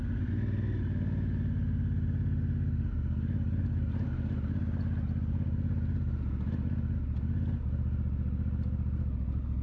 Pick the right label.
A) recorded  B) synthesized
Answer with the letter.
A